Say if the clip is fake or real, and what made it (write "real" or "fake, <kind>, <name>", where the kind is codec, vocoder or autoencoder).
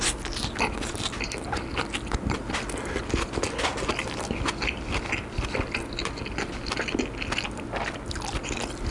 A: real